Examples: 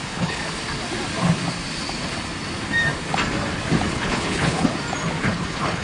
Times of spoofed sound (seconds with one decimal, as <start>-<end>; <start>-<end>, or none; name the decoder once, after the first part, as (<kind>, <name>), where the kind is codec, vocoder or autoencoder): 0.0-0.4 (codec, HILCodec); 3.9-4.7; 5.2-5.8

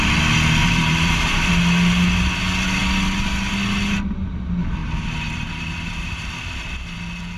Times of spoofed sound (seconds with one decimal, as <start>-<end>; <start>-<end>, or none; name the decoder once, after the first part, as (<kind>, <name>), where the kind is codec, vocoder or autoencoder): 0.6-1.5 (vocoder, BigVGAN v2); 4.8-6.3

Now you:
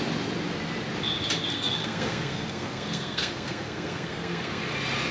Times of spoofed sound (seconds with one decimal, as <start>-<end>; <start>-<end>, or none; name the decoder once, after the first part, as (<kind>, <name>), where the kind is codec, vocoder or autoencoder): 1.5-4.6 (codec, SNAC)

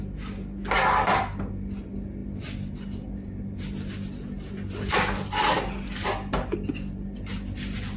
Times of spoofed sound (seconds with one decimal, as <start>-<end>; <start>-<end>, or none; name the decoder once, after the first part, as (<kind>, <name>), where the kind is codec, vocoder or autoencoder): none